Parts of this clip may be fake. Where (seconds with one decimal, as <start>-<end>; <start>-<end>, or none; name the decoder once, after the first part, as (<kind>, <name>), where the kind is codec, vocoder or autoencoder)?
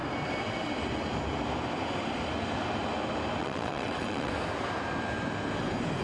3.4-4.3 (vocoder, WaveNeXt)